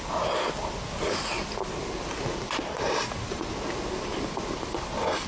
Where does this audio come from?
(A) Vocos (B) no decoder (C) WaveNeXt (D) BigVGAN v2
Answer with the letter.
B